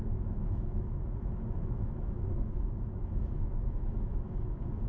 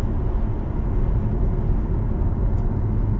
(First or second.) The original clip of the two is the second